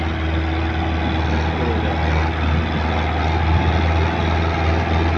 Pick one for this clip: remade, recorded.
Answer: recorded